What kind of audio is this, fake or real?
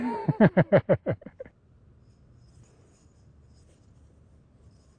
real